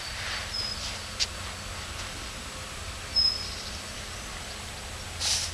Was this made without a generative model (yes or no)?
yes